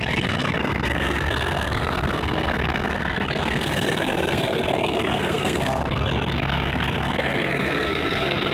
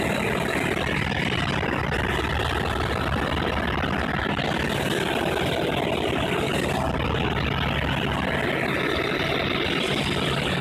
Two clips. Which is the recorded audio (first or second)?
second